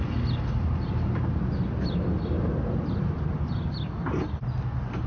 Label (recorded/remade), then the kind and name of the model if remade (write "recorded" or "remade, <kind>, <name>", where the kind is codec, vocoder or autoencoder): recorded